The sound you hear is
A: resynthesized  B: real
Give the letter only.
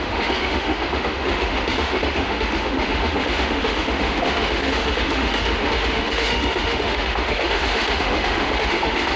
A